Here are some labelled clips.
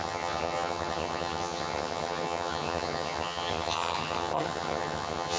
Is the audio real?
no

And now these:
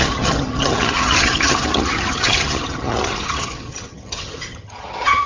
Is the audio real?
no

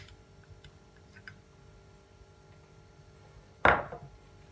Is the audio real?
yes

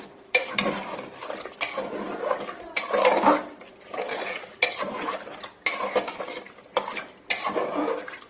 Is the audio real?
yes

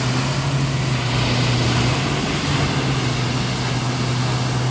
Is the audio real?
yes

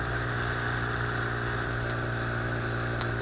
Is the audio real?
yes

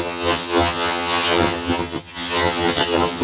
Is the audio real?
no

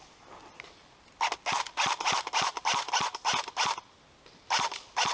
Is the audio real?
yes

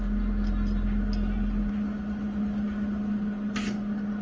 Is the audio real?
yes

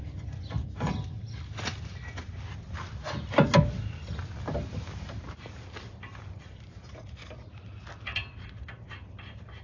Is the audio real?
yes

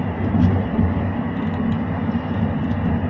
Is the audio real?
yes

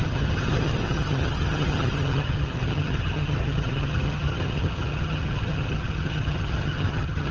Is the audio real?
no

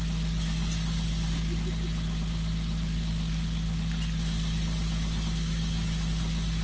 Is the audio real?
yes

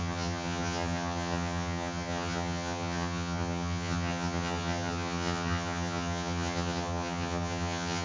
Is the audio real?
no